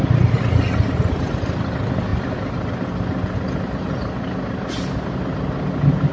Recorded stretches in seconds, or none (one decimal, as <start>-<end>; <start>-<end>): 0.0-6.1

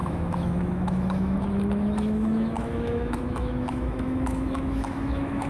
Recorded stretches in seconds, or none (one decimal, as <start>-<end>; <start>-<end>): none

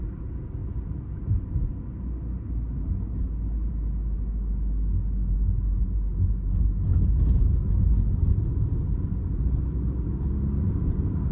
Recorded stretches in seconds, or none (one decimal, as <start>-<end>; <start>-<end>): 0.0-11.3

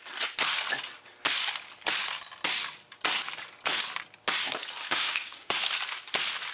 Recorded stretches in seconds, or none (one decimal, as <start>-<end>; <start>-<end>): 0.0-4.8; 5.5-6.5

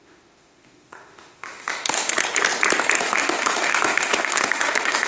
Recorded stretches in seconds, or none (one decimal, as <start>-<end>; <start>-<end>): 2.1-3.0

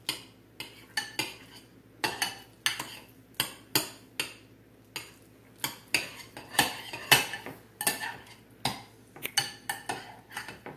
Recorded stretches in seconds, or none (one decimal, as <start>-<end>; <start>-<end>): 0.0-10.8

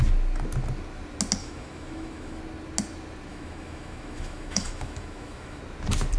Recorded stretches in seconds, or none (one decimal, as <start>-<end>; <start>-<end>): 0.0-1.4; 2.4-3.3; 5.6-6.2

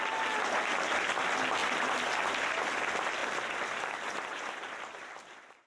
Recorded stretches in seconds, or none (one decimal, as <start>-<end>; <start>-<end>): 0.0-5.7